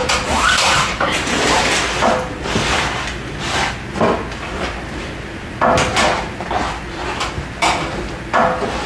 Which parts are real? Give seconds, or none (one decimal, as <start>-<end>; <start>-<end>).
1.6-8.9